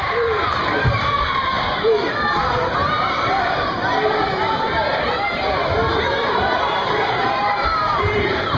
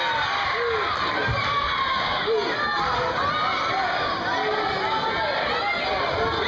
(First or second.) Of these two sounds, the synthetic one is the first